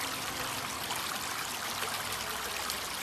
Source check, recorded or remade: recorded